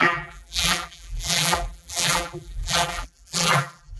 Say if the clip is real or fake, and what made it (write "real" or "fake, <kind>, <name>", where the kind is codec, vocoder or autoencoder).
fake, vocoder, BigVGAN v2